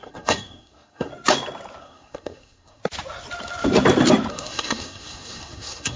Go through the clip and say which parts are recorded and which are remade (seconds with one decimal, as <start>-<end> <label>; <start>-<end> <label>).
0.0-1.1 remade; 1.1-1.8 recorded; 1.8-2.8 remade; 2.8-4.3 recorded; 4.3-6.0 remade